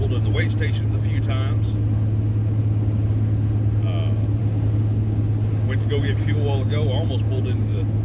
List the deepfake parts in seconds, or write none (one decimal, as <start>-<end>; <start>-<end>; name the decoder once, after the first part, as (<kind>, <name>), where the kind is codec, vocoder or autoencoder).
none